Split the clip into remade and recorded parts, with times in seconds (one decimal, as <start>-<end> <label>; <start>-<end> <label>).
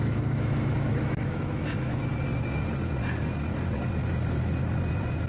0.0-2.0 remade; 2.0-5.3 recorded